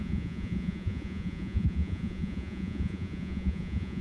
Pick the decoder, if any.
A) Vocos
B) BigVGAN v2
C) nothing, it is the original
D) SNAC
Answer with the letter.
A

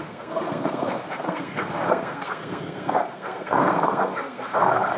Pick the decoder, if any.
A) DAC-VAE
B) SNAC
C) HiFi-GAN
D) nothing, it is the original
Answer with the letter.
B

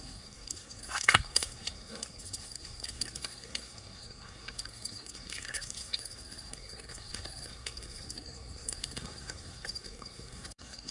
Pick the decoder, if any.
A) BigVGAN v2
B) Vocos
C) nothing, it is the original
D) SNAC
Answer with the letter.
D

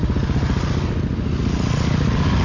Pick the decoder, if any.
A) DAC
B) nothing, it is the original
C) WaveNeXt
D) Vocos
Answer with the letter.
B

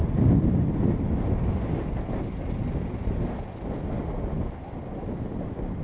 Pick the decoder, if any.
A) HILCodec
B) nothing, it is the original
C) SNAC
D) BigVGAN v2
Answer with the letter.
B